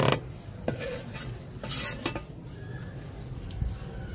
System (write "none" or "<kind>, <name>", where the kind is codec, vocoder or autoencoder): none